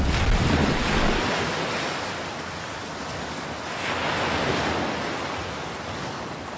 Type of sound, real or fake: real